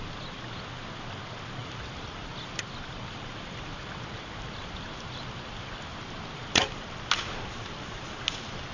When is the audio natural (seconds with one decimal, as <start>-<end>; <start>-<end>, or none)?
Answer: 0.0-1.6; 6.8-8.7